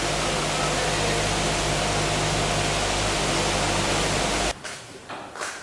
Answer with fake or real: real